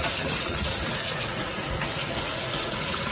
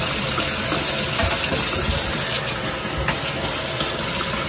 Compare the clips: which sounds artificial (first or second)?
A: first